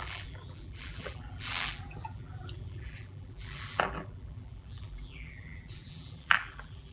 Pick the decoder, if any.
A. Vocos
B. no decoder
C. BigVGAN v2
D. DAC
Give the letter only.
C